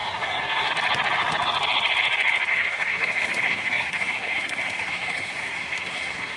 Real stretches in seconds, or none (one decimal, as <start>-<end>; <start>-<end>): 0.7-2.5